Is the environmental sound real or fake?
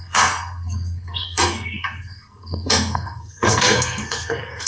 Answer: fake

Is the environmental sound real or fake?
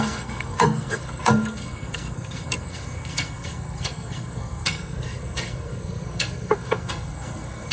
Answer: fake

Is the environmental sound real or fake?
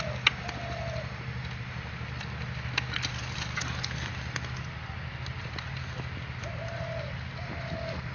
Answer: real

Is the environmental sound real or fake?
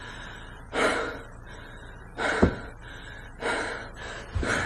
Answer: real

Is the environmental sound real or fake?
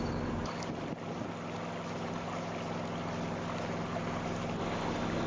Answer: real